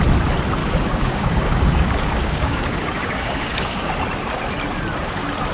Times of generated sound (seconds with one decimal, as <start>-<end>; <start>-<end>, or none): 0.6-3.9